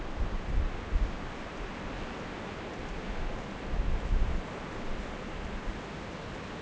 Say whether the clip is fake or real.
real